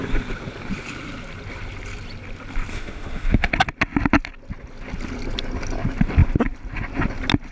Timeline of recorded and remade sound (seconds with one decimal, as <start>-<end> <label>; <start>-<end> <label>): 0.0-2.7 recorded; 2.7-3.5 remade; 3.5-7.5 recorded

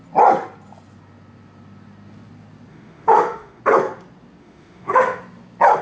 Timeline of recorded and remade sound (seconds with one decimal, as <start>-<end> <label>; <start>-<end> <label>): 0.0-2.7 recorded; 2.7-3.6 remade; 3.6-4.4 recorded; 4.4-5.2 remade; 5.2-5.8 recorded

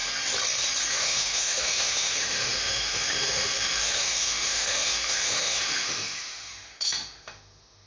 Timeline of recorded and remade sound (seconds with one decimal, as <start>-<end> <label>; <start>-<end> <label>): 0.0-0.9 recorded; 0.9-7.9 remade

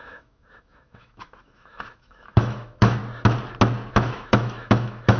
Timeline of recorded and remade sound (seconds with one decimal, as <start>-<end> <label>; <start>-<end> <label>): 0.0-3.0 remade; 3.0-3.9 recorded; 3.9-5.2 remade

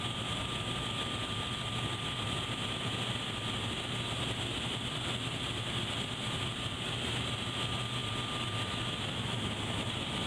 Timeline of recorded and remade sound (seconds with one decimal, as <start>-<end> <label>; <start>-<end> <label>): 0.0-10.3 recorded

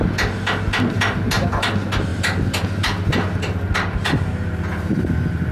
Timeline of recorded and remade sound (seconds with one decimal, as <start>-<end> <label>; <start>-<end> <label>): 0.0-5.5 recorded